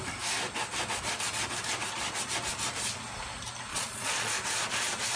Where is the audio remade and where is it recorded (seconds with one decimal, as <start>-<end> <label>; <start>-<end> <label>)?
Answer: 0.0-3.7 recorded; 3.7-4.3 remade; 4.3-5.2 recorded